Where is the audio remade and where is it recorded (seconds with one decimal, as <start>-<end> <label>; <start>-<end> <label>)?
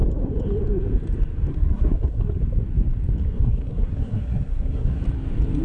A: 0.0-1.5 recorded; 1.5-2.4 remade; 2.4-3.2 recorded; 3.2-5.0 remade; 5.0-5.6 recorded